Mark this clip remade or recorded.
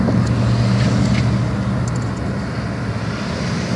recorded